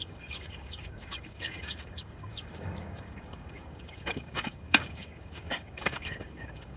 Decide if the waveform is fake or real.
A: fake